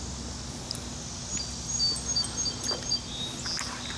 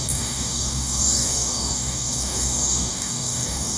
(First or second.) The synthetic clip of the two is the second